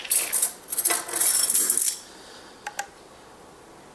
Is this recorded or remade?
recorded